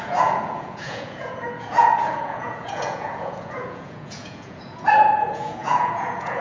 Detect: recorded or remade remade